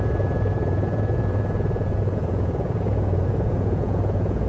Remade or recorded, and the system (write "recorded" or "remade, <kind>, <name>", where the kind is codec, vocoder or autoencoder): remade, vocoder, Vocos